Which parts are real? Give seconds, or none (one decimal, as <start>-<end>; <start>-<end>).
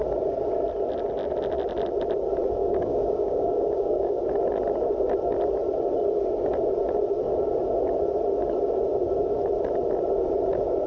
0.0-2.6; 4.2-10.9